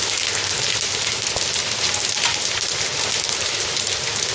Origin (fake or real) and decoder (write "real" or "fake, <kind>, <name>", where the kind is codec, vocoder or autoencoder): real